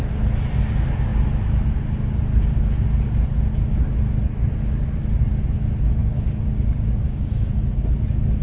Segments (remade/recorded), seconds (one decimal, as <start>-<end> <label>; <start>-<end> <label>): 0.0-6.0 recorded; 6.0-8.4 remade